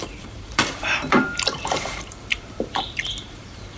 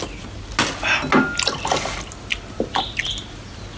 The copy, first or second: first